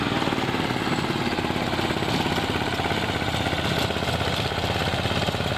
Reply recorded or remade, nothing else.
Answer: recorded